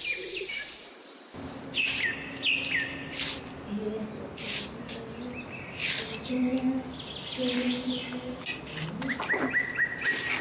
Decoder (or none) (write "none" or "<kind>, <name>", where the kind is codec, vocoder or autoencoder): none